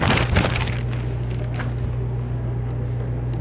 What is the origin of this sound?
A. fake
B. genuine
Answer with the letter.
B